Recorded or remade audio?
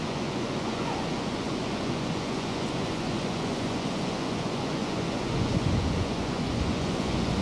remade